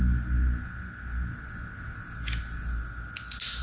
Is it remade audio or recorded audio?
recorded